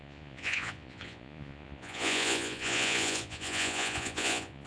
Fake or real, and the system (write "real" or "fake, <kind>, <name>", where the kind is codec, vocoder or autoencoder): fake, vocoder, Vocos